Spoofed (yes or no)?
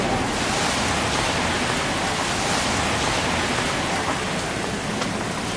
no